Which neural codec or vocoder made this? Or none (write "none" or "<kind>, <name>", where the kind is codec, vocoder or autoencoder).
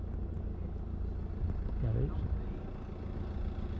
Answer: none